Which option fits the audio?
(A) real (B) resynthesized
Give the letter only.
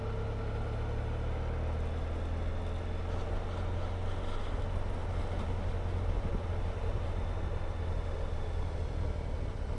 A